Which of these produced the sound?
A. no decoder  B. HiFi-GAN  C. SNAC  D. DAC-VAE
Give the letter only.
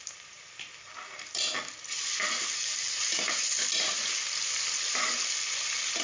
A